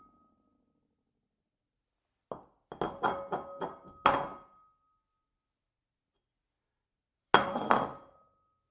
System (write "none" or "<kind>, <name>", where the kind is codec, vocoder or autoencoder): none